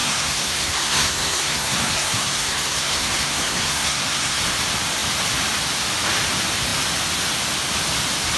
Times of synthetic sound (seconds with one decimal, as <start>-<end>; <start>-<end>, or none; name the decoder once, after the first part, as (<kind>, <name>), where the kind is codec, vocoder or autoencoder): 0.0-4.4 (codec, SNAC)